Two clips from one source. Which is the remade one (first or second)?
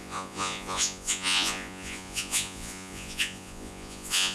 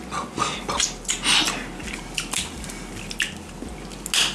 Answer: first